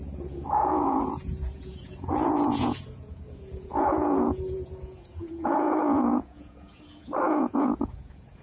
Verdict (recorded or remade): remade